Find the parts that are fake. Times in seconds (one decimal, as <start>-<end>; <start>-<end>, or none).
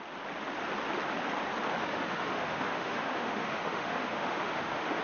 1.8-5.0